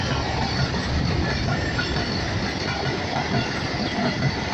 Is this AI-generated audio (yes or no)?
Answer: no